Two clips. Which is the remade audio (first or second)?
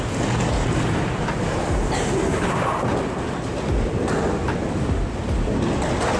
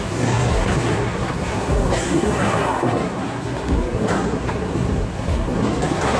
second